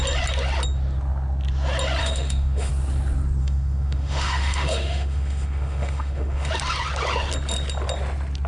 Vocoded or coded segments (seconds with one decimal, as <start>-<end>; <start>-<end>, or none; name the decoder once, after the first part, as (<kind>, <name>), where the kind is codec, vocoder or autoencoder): 2.0-2.7 (autoencoder, DAC-VAE); 3.4-6.5